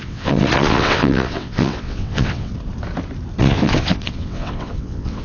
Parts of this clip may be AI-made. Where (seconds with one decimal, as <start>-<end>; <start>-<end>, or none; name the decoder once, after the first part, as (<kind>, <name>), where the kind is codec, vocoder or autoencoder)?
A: 0.0-2.5 (vocoder, WaveNeXt); 3.4-5.2